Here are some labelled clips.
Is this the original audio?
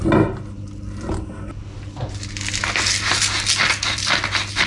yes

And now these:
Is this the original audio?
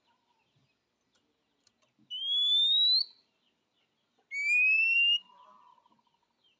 yes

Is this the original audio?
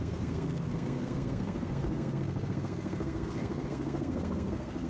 no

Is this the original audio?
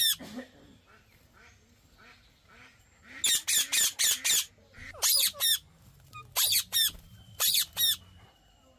yes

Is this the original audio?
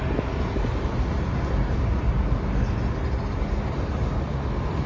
yes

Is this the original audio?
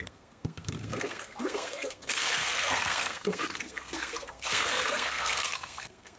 no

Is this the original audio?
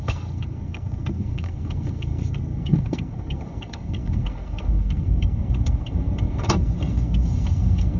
no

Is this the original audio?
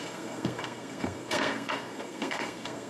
no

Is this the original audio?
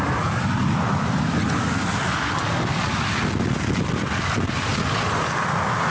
yes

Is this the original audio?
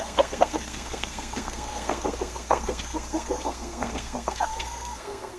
no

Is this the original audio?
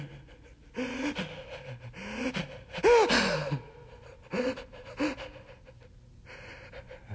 yes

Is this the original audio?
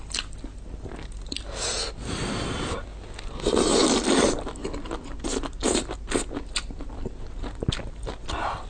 yes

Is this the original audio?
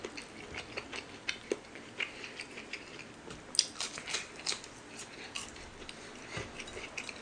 yes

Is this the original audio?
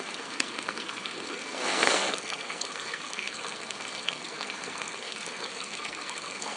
no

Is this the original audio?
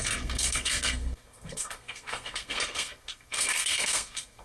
no